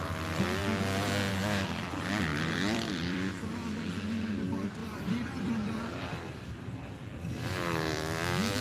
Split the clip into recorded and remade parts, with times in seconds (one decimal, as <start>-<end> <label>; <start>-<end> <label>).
0.0-2.3 recorded; 2.3-3.4 remade; 3.4-4.8 recorded; 4.8-5.5 remade; 5.5-8.6 recorded